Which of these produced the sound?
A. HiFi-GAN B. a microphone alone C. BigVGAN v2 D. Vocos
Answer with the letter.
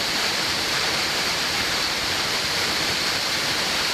C